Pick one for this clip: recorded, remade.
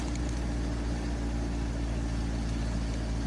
recorded